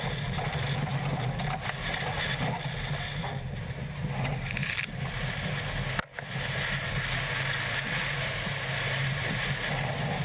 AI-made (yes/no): no